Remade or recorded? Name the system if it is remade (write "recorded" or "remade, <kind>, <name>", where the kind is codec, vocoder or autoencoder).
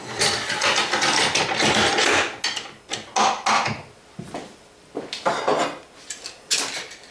recorded